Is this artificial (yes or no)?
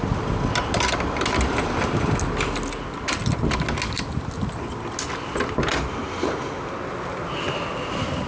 no